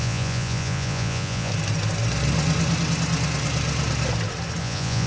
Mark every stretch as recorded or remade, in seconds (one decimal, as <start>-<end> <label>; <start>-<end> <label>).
0.0-1.5 remade; 1.5-4.6 recorded; 4.6-5.1 remade